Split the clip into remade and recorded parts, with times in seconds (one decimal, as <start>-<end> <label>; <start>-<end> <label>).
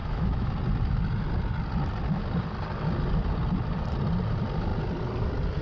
0.0-0.5 remade; 0.5-5.6 recorded